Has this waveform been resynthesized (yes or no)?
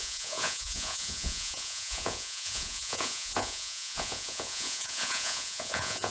yes